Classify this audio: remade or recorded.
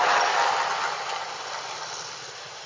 recorded